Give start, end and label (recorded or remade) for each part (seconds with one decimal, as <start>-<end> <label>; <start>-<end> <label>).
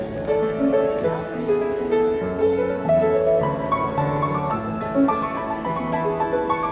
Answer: 0.0-2.4 recorded; 2.4-3.4 remade; 3.4-6.7 recorded